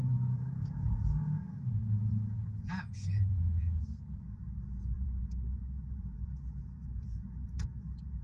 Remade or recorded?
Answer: remade